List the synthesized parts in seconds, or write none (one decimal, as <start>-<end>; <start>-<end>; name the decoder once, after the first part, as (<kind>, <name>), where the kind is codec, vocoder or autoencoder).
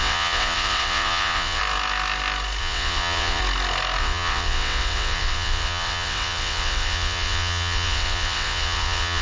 0.0-1.6 (vocoder, WaveNeXt); 2.6-3.4; 4.0-9.2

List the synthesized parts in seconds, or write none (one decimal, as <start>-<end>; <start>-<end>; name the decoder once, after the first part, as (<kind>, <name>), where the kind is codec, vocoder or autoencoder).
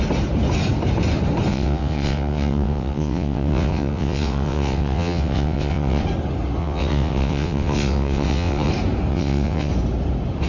1.5-6.0 (vocoder, WaveNeXt); 6.6-8.7; 9.1-9.7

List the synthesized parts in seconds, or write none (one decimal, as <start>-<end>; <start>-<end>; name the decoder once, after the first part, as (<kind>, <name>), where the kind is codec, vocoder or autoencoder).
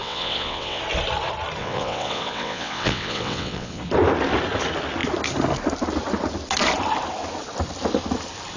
0.0-0.8 (vocoder, WaveNeXt); 1.6-3.8